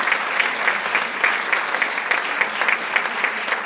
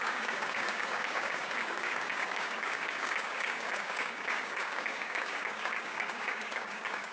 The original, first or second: first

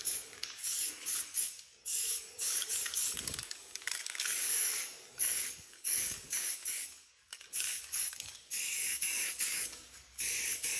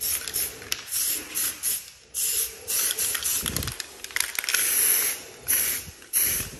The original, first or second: second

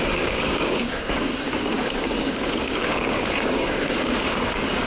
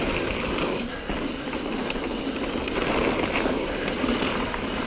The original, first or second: second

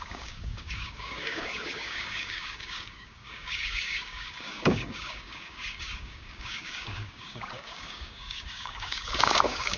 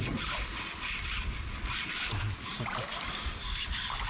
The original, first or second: second